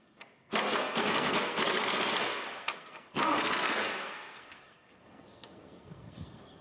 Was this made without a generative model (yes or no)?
no